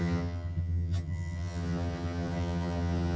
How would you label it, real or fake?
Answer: fake